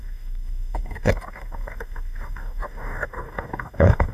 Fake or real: fake